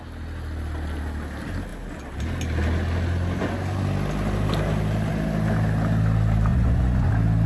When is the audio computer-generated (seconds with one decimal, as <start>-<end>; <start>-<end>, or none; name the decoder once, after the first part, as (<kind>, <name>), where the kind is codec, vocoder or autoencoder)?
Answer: 6.5-7.1 (vocoder, Vocos)